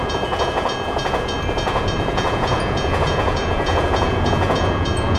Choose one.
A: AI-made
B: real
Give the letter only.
A